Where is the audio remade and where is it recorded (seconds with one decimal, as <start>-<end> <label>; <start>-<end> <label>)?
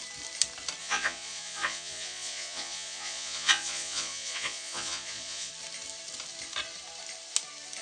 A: 0.0-0.8 recorded; 0.8-5.5 remade; 5.5-7.8 recorded